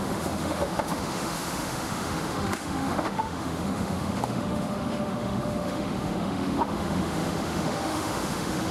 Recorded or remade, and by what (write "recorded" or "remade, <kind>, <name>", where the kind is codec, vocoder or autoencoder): remade, autoencoder, DAC-VAE